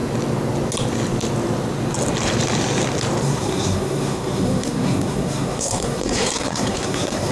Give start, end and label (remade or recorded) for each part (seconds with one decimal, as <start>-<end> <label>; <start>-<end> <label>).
0.0-3.2 recorded; 3.2-7.3 remade